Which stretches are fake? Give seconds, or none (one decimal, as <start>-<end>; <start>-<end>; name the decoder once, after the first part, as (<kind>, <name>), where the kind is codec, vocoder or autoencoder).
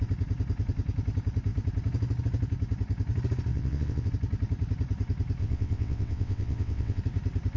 3.5-4.1 (vocoder, WaveNeXt); 5.4-7.0